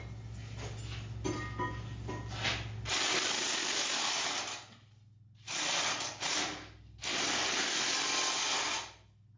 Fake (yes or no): no